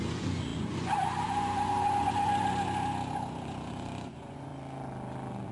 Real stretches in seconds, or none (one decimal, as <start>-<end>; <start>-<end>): 4.5-5.5